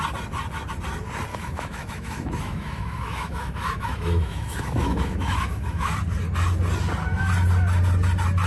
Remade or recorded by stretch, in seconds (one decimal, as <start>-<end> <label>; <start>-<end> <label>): 0.0-1.3 recorded; 1.3-5.9 remade; 5.9-8.5 recorded